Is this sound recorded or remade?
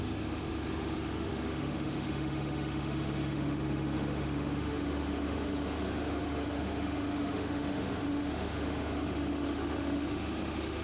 remade